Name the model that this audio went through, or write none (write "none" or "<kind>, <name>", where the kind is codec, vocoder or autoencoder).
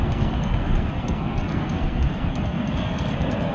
codec, SNAC